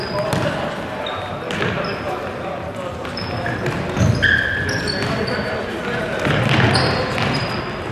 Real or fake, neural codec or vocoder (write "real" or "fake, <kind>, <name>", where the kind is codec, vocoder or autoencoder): real